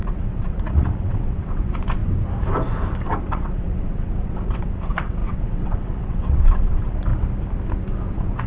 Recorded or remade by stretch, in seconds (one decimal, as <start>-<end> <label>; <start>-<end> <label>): 0.0-2.0 remade; 2.0-3.2 recorded; 3.2-7.1 remade; 7.1-8.1 recorded; 8.1-8.5 remade